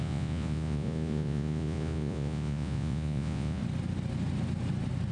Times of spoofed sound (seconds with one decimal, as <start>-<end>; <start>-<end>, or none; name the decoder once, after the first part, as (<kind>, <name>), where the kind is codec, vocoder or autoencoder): 0.0-3.6 (vocoder, Vocos)